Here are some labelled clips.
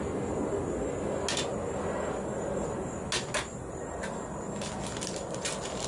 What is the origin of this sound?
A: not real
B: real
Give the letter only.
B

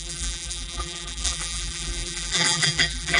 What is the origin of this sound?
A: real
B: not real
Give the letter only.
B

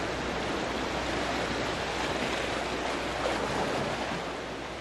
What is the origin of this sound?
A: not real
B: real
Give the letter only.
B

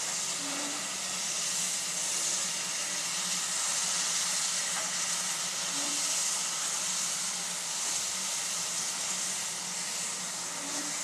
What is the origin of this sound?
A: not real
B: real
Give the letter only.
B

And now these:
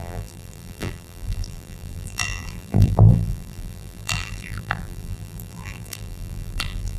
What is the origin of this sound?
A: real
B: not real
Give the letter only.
B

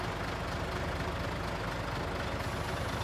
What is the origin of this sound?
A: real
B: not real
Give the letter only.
A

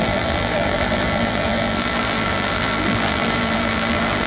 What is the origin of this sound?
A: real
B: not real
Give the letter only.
B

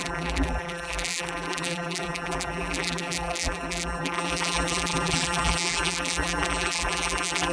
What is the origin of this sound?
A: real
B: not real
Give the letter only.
B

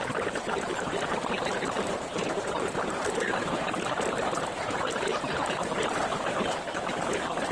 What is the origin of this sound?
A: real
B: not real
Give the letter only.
B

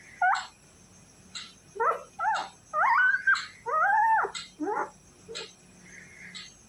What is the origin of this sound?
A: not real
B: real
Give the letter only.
B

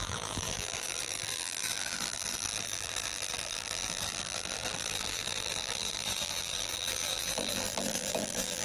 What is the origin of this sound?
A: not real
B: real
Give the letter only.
A